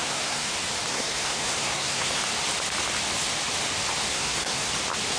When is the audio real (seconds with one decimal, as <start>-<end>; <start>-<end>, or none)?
0.5-0.9; 2.2-4.1; 4.7-5.2